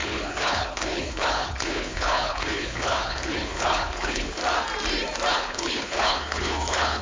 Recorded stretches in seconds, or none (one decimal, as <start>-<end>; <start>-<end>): 4.4-5.3